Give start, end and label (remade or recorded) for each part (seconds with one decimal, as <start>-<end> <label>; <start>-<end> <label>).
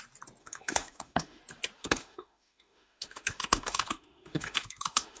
0.0-0.4 recorded; 0.4-1.4 remade; 1.4-1.8 recorded; 1.8-5.2 remade